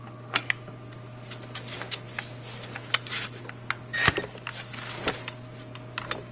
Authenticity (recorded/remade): recorded